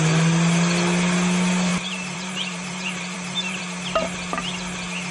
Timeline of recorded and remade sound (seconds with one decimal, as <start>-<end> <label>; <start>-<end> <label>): 0.0-1.7 recorded; 1.7-3.6 remade; 3.6-5.1 recorded